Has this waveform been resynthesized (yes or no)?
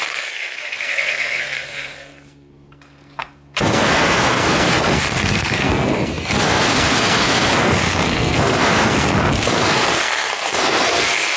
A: yes